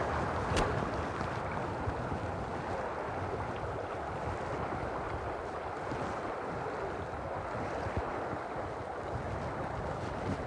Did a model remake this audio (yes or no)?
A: no